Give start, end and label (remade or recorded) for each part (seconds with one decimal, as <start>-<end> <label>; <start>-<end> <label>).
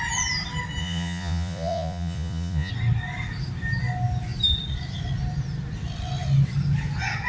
0.0-0.8 recorded; 0.8-2.7 remade; 2.7-7.3 recorded